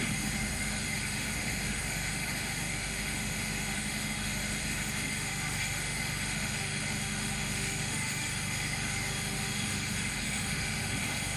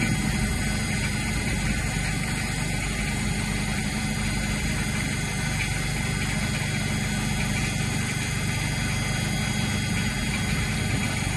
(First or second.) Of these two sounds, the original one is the second